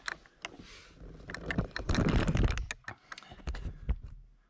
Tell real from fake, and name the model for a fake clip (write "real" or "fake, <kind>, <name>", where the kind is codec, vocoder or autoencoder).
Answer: real